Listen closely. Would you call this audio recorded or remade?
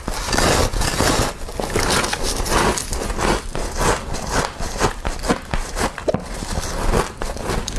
recorded